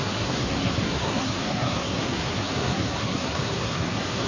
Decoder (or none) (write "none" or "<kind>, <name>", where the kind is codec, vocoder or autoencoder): codec, SNAC